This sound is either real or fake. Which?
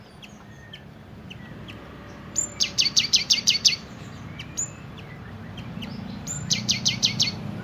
fake